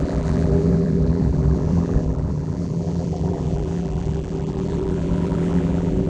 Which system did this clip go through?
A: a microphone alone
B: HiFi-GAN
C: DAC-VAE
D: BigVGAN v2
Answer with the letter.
D